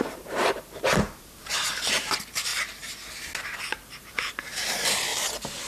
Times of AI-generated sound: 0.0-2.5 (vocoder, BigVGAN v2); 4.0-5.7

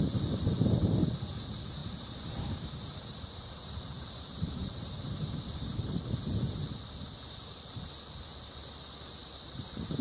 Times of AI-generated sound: 1.8-4.9 (vocoder, BigVGAN v2); 9.2-10.0

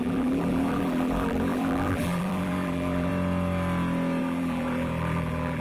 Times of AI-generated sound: 0.0-3.1 (vocoder, BigVGAN v2); 4.2-5.6

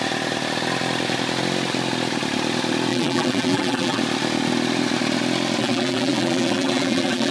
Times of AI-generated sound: 2.9-4.0 (vocoder, BigVGAN v2); 5.6-7.3

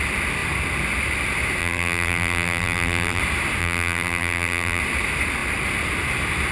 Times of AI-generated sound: 1.6-3.2 (vocoder, BigVGAN v2); 3.6-4.8